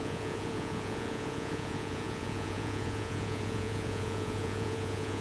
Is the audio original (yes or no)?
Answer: no